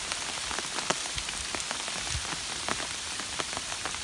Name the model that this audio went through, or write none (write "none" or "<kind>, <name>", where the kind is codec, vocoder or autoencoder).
none